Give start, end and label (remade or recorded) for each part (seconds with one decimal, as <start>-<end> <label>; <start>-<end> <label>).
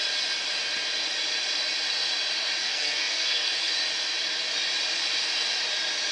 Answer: 0.0-2.6 recorded; 2.6-3.7 remade; 3.7-6.1 recorded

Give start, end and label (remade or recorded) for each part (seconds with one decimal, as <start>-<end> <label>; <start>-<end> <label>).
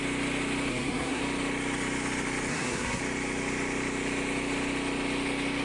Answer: 0.0-0.7 recorded; 0.7-1.2 remade; 1.2-2.5 recorded; 2.5-3.0 remade; 3.0-5.6 recorded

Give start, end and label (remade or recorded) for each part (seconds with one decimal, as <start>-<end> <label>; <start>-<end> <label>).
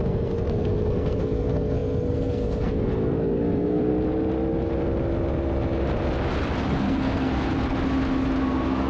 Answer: 0.0-3.9 remade; 3.9-6.7 recorded; 6.7-7.3 remade; 7.3-8.4 recorded; 8.4-8.9 remade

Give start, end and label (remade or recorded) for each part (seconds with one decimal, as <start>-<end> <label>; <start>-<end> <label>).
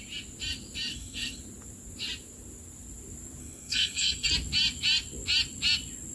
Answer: 0.0-0.9 recorded; 0.9-1.4 remade; 1.4-3.4 recorded; 3.4-4.3 remade; 4.3-6.1 recorded